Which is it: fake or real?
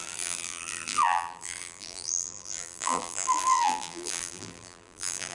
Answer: fake